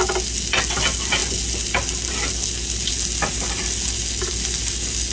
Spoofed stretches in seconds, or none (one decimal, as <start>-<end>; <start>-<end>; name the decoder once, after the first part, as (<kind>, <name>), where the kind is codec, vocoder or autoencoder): none